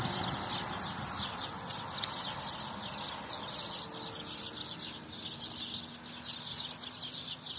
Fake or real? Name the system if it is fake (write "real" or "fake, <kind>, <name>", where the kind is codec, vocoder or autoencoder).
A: real